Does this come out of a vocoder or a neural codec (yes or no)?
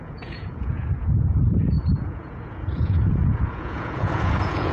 yes